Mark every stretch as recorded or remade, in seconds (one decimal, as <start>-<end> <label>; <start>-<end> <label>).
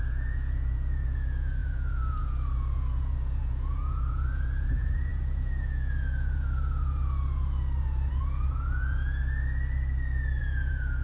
0.0-9.2 remade; 9.2-10.4 recorded; 10.4-11.0 remade